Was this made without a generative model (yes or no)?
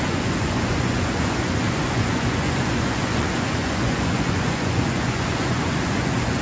no